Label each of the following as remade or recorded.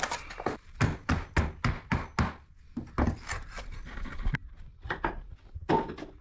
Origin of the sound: recorded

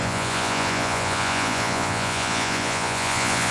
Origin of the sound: remade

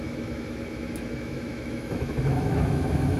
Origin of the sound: remade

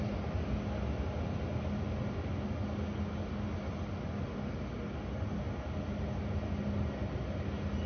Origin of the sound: recorded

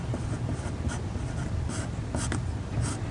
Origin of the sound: recorded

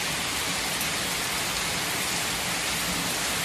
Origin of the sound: recorded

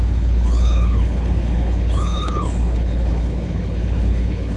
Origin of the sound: remade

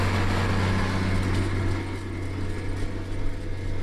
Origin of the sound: recorded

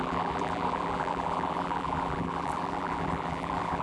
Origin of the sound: remade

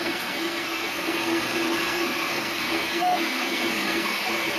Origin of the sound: remade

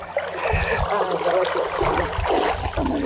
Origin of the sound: recorded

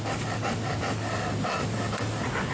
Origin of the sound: recorded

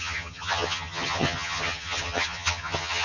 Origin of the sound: remade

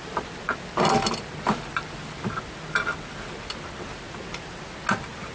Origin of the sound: recorded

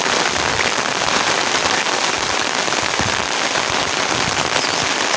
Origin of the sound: remade